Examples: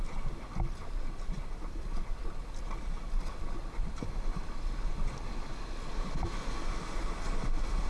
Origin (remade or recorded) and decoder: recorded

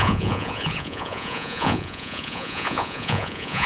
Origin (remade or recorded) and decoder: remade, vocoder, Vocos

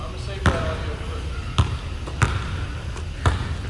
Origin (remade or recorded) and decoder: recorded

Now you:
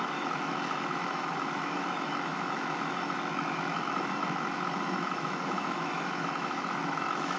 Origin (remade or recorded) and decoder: remade, autoencoder, DAC-VAE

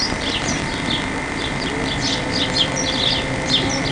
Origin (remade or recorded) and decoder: recorded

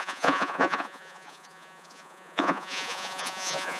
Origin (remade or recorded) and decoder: remade, vocoder, Vocos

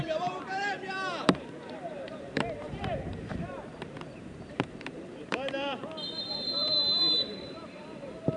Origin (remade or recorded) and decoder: remade, vocoder, BigVGAN v2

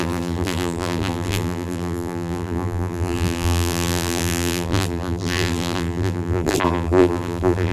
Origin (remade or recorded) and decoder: remade, vocoder, BigVGAN v2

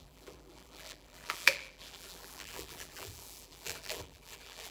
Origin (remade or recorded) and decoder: remade, vocoder, BigVGAN v2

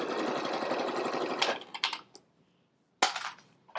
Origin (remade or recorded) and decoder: recorded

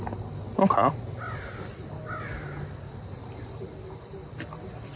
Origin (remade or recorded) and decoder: recorded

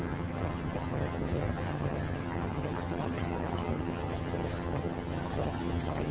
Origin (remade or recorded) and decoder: remade, vocoder, HiFi-GAN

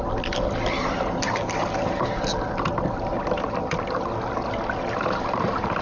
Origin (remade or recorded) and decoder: recorded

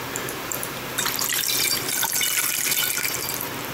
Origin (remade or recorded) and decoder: remade, vocoder, BigVGAN v2